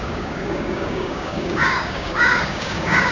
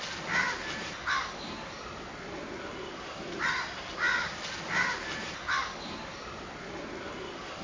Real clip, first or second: second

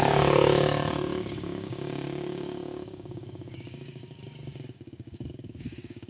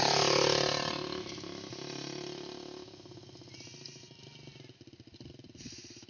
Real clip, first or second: second